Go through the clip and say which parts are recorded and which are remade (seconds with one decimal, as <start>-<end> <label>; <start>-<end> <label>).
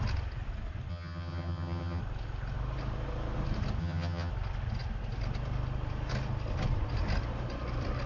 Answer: 0.0-0.9 recorded; 0.9-2.0 remade; 2.0-3.8 recorded; 3.8-4.3 remade; 4.3-8.1 recorded